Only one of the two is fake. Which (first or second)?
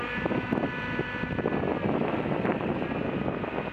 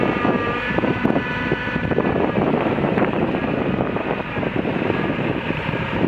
second